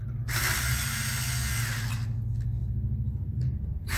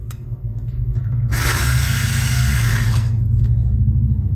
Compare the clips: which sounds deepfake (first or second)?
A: second